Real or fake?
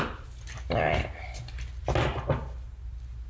real